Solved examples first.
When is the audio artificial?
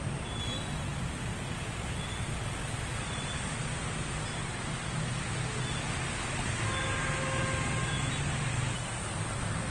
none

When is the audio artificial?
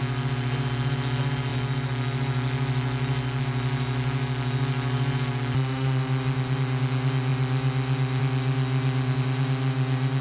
none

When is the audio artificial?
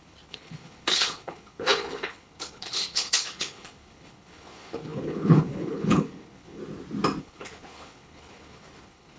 0.0-6.6 (codec, HILCodec); 7.2-9.2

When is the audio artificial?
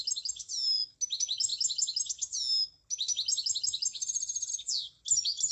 none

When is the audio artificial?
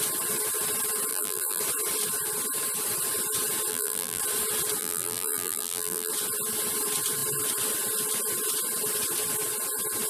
1.1-1.6 (vocoder, BigVGAN v2); 3.7-4.2; 4.8-6.1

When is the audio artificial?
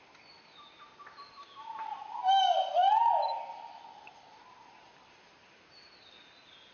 none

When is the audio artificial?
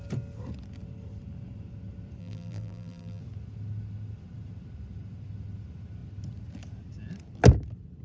2.2-3.2 (vocoder, BigVGAN v2)